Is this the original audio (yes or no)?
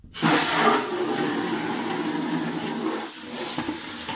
yes